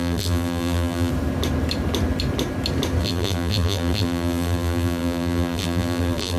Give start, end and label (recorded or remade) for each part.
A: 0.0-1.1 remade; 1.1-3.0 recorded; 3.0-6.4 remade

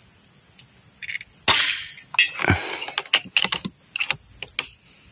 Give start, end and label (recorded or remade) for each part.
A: 0.0-5.1 recorded